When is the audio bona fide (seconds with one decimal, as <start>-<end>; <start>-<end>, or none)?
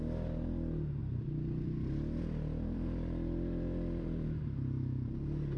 0.0-1.0; 4.4-5.6